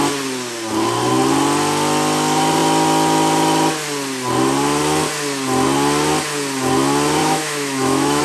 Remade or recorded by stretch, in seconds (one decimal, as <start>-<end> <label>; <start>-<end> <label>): 0.0-7.2 recorded; 7.2-8.2 remade